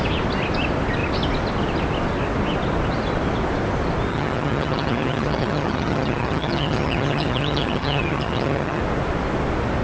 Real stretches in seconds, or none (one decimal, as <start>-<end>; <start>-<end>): 0.0-4.1; 8.8-9.8